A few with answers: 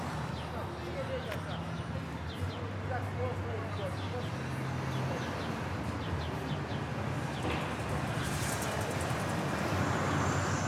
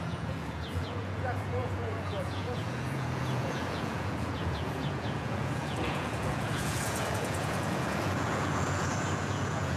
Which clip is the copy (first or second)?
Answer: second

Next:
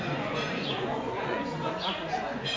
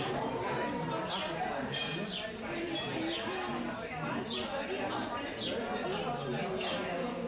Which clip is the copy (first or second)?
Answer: first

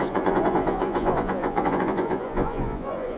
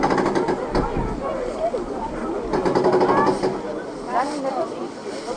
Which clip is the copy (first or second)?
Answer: first